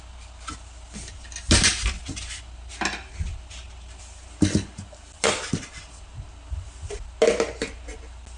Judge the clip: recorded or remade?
recorded